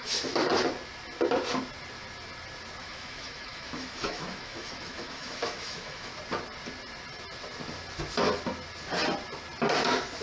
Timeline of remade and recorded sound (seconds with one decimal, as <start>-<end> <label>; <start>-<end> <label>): 0.0-0.5 remade; 0.5-2.8 recorded; 2.8-6.1 remade; 6.1-10.2 recorded